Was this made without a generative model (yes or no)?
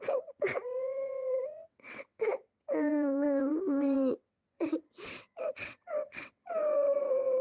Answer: no